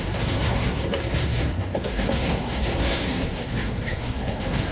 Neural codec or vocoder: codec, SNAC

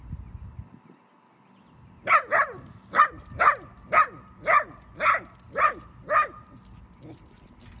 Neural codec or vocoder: none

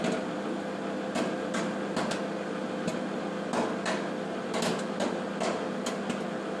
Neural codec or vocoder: none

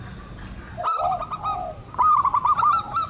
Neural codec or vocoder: none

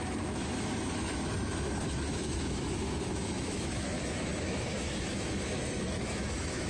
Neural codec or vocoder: autoencoder, DAC-VAE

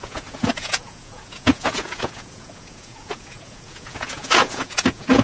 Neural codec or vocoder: vocoder, Vocos